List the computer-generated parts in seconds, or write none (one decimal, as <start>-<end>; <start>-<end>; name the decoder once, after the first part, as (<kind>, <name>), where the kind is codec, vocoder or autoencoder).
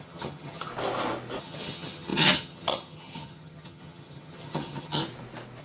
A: 0.0-0.7 (vocoder, HiFi-GAN); 1.4-5.0